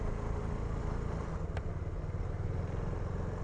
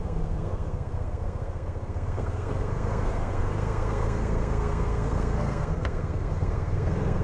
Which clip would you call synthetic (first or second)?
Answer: second